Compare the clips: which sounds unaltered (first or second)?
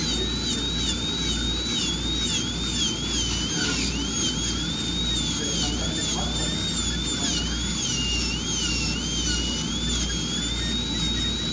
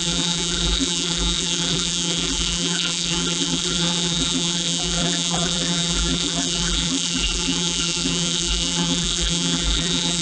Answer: first